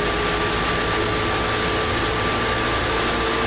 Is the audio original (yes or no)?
yes